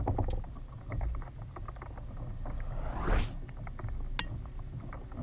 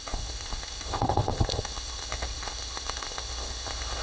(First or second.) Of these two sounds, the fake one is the second